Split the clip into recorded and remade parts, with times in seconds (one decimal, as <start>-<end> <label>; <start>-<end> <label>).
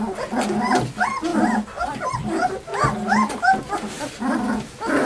0.0-5.1 recorded